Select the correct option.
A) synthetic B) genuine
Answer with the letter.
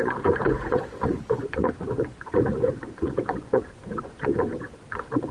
A